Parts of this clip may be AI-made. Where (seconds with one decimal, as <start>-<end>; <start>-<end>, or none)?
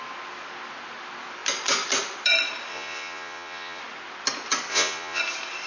2.7-3.8; 4.7-5.2